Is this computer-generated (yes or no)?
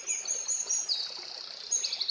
no